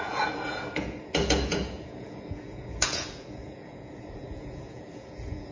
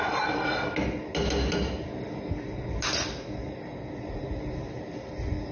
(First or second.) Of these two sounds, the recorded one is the second